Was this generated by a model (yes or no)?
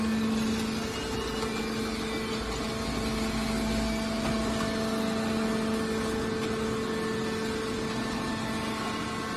no